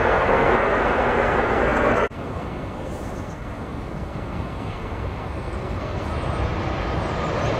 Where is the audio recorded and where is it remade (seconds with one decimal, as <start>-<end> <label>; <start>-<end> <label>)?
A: 0.0-6.1 remade; 6.1-7.6 recorded